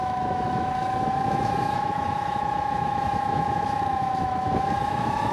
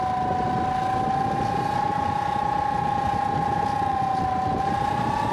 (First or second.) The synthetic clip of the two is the first